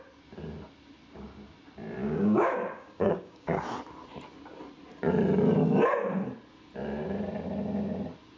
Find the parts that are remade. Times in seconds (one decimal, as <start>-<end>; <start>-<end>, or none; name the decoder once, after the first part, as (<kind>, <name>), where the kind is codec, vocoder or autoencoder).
2.0-3.6 (codec, DAC)